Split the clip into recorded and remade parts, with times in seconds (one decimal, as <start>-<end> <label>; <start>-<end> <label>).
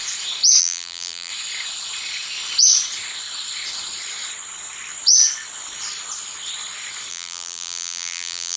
0.0-0.6 recorded; 0.6-1.3 remade; 1.3-7.1 recorded; 7.1-8.6 remade